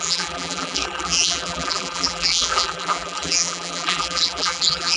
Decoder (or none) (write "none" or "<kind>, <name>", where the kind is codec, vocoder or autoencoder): vocoder, BigVGAN v2